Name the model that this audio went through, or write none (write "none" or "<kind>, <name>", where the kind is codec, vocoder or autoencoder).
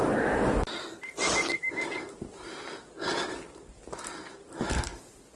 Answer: none